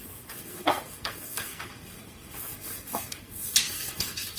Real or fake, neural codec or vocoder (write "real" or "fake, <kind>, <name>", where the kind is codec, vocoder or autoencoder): fake, codec, SNAC